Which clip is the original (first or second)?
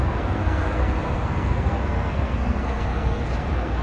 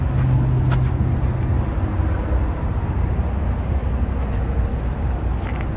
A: second